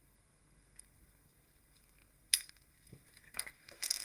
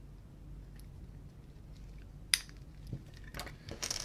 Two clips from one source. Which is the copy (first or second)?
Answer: first